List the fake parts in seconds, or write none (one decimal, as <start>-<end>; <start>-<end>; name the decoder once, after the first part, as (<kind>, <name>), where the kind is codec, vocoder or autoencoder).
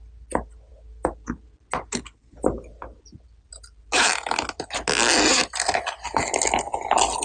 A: none